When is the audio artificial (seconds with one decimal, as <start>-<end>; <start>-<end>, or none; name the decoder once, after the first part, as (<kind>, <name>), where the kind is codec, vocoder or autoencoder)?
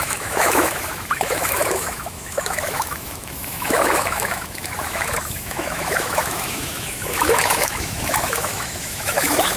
0.0-9.6 (autoencoder, DAC-VAE)